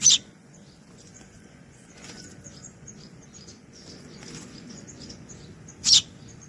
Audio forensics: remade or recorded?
remade